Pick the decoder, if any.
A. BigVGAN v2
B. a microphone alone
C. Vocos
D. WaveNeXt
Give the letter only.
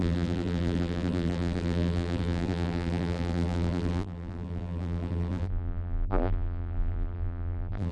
A